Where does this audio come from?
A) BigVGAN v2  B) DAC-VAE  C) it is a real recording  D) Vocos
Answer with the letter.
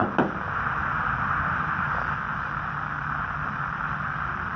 C